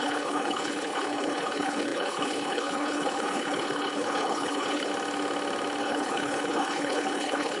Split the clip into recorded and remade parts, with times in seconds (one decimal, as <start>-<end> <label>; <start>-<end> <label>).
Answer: 0.0-4.9 remade; 4.9-5.8 recorded; 5.8-7.6 remade